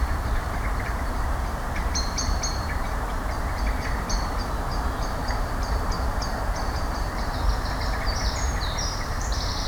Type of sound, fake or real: fake